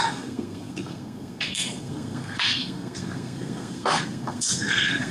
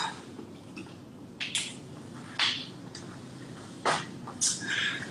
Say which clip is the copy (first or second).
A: first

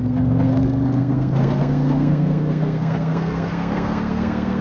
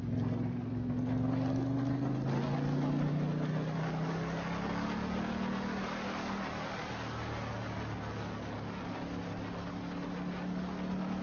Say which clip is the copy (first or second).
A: first